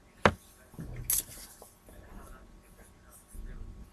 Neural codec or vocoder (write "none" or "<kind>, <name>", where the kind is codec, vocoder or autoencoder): none